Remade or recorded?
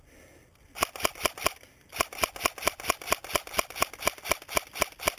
recorded